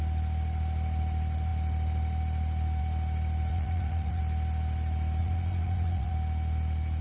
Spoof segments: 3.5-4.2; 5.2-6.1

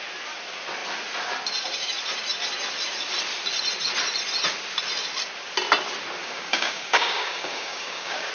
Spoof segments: 6.2-8.3

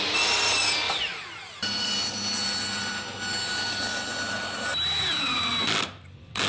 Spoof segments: none

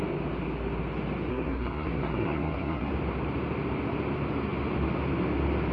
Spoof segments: 1.3-2.9

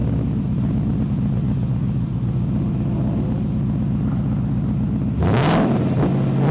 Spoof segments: none

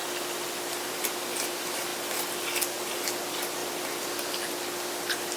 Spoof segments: none

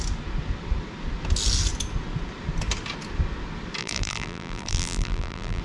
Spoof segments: 3.8-5.6

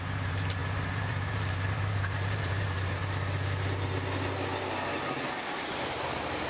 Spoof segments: 0.0-3.0; 5.7-6.5